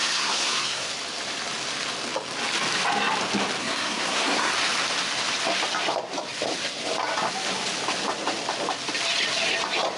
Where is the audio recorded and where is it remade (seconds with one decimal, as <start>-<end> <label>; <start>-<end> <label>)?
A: 0.0-0.9 remade; 0.9-3.6 recorded; 3.6-4.5 remade; 4.5-10.0 recorded